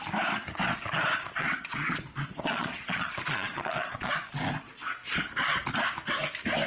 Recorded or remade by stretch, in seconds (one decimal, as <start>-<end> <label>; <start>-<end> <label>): 0.0-1.4 recorded; 1.4-4.3 remade; 4.3-6.7 recorded